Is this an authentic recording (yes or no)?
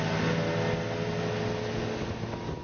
yes